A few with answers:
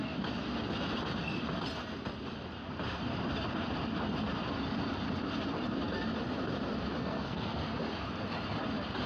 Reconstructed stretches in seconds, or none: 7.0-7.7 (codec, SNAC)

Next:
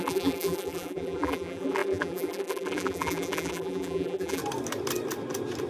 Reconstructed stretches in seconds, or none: 0.0-4.4 (vocoder, BigVGAN v2)

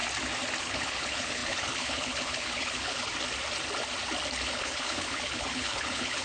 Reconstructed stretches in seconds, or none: 0.6-3.1 (codec, HILCodec); 4.5-6.2

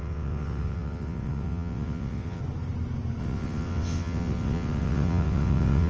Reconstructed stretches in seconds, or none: 0.0-2.4 (vocoder, WaveNeXt); 3.2-5.9

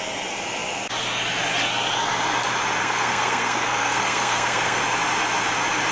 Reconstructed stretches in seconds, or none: 2.8-4.8 (codec, SNAC)

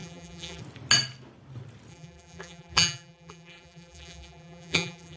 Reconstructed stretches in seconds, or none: 0.0-0.6 (vocoder, BigVGAN v2); 1.9-5.2

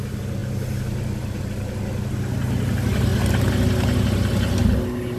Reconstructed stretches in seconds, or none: none

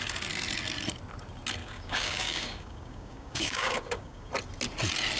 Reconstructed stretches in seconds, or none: 1.6-4.3 (codec, DAC)